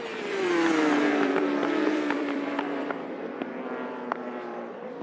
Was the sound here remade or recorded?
remade